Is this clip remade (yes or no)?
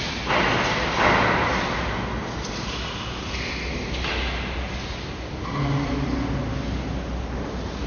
no